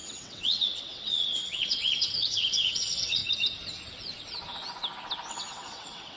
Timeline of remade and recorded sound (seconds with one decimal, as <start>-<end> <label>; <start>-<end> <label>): 0.0-3.2 remade; 3.2-5.3 recorded; 5.3-6.2 remade